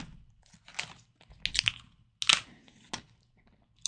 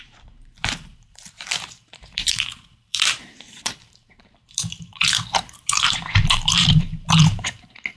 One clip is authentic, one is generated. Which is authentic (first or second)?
first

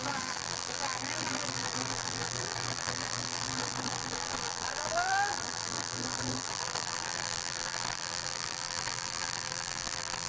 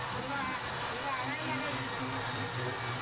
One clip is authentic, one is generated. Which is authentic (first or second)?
second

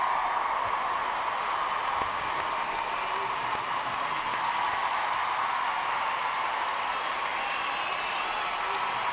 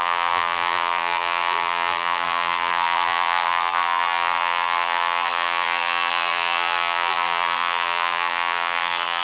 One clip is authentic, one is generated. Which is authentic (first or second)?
first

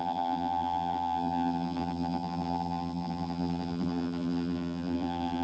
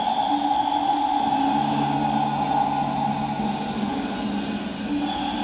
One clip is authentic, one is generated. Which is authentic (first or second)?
second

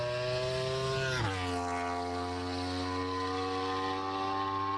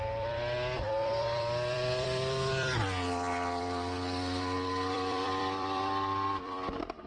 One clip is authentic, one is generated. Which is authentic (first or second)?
first